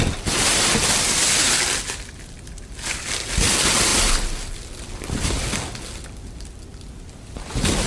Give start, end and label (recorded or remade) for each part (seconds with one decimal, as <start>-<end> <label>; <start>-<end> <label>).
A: 0.0-7.9 recorded